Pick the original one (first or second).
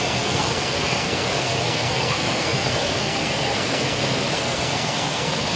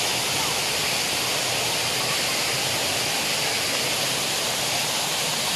second